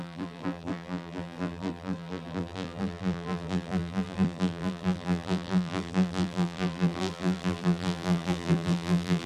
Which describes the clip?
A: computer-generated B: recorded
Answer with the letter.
A